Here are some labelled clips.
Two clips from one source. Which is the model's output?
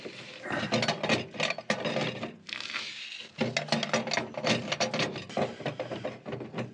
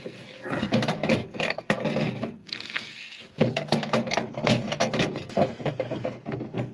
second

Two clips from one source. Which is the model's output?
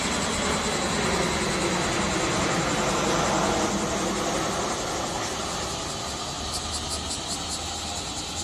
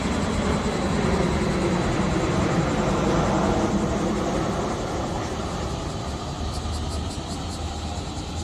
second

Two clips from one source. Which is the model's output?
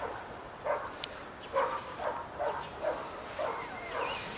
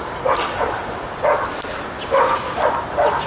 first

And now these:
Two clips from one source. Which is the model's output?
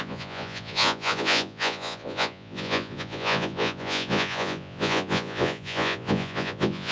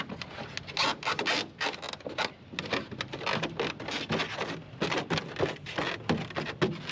first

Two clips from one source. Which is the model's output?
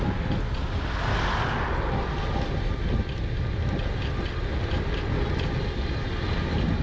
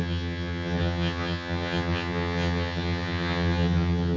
second